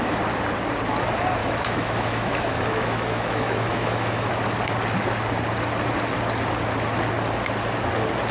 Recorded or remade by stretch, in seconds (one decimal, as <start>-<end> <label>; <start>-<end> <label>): 0.0-1.4 recorded; 1.4-4.3 remade; 4.3-8.3 recorded